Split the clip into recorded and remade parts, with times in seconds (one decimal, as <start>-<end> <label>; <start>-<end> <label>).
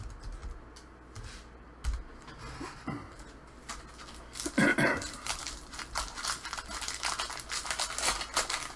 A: 0.0-4.7 recorded; 4.7-5.5 remade; 5.5-8.8 recorded